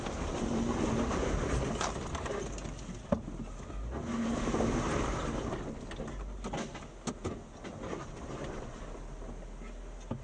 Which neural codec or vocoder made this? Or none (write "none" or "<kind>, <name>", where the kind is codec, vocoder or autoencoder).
none